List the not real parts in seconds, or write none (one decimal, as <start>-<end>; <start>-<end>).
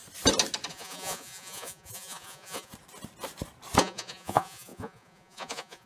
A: 0.7-2.7; 3.8-5.9